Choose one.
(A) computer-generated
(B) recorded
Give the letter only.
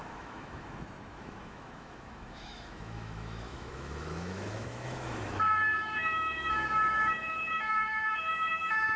A